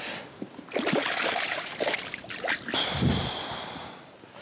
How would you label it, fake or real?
real